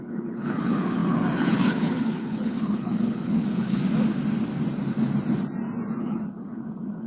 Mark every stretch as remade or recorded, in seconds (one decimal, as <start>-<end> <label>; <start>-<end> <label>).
0.0-3.8 remade; 3.8-6.0 recorded; 6.0-7.1 remade